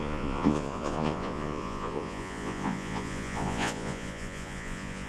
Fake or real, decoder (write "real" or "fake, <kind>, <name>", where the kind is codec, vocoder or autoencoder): fake, vocoder, Vocos